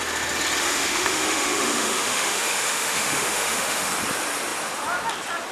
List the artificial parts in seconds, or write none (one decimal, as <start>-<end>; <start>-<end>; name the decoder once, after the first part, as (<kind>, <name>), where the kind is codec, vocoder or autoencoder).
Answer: 0.6-3.9 (autoencoder, DAC-VAE)

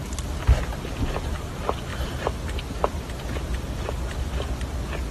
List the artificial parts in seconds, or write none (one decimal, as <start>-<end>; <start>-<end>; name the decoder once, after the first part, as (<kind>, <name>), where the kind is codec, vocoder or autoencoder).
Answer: none

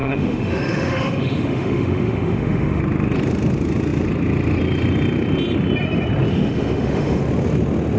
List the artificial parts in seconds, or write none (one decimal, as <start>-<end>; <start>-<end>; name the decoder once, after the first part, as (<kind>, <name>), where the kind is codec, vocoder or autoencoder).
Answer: 0.0-2.8 (autoencoder, DAC-VAE); 6.3-7.2

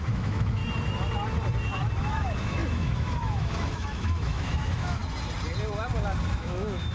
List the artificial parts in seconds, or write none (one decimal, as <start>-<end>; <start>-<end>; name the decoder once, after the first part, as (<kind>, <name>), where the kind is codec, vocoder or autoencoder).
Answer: 0.0-0.6 (autoencoder, DAC-VAE); 2.0-5.0; 6.3-6.9